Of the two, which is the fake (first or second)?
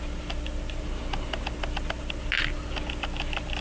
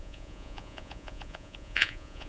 second